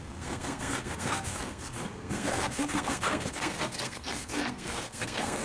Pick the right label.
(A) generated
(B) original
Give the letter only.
A